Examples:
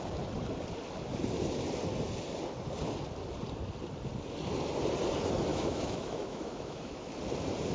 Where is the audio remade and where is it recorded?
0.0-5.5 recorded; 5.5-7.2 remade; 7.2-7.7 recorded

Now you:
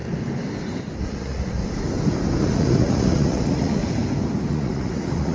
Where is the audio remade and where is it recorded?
0.0-1.0 recorded; 1.0-1.6 remade; 1.6-2.4 recorded; 2.4-3.8 remade; 3.8-4.5 recorded; 4.5-5.3 remade

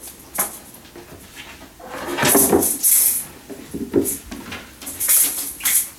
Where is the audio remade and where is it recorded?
0.0-6.0 recorded